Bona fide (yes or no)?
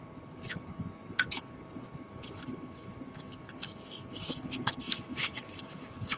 no